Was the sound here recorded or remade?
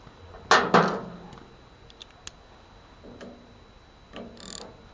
recorded